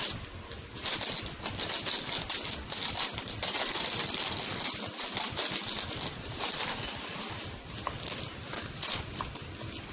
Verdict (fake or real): real